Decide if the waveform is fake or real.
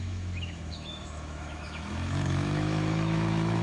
fake